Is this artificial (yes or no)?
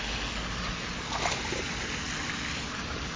no